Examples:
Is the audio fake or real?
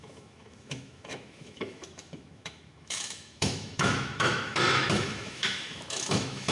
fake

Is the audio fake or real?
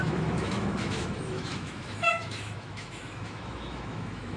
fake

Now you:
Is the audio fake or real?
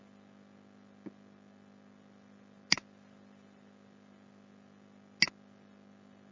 real